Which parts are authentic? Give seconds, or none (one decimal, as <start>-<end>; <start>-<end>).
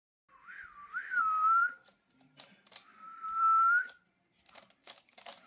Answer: 0.0-1.2